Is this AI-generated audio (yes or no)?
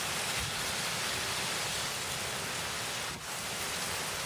no